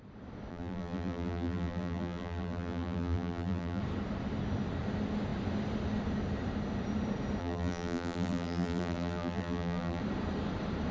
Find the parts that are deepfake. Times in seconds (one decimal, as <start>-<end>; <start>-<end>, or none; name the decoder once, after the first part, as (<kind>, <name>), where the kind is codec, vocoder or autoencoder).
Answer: 0.5-3.8 (vocoder, BigVGAN v2); 7.4-10.0